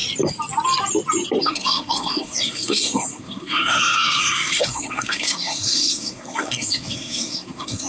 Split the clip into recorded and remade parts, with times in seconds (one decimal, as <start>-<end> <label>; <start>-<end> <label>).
0.0-1.4 recorded; 1.4-7.9 remade